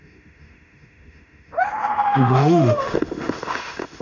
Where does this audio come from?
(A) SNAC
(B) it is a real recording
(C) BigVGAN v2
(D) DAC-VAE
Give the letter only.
D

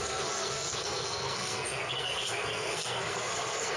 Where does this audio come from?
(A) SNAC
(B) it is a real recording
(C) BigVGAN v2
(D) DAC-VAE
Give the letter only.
A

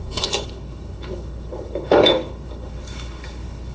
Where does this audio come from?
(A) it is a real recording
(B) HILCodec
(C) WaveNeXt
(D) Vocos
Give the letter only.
B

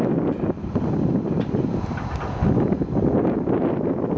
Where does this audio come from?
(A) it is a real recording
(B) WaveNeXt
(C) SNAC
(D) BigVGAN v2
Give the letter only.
A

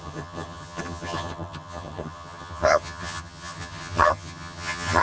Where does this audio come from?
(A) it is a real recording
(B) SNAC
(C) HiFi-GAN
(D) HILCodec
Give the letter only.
C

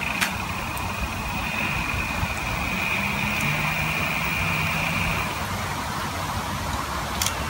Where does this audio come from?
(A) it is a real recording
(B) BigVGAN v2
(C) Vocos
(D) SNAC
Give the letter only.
A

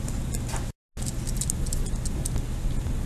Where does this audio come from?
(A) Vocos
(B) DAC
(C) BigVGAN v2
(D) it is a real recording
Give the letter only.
D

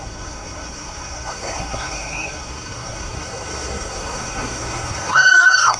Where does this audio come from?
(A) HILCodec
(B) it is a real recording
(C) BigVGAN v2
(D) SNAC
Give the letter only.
D